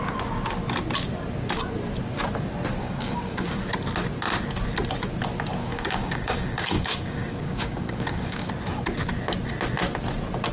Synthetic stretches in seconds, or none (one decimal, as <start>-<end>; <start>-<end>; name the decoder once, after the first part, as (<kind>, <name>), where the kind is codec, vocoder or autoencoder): 2.8-3.6 (codec, DAC); 5.6-8.5